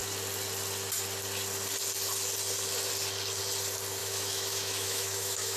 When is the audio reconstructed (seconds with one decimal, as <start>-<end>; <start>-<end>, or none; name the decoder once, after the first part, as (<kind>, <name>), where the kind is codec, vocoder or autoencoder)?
4.0-5.6 (autoencoder, DAC-VAE)